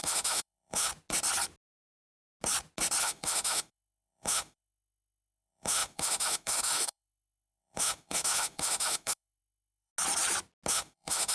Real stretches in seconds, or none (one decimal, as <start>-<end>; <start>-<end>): 0.9-3.0; 9.9-10.7